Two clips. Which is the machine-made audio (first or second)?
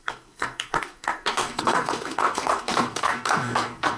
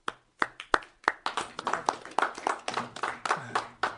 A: first